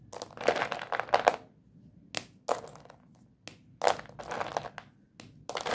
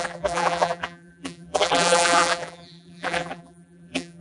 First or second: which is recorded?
first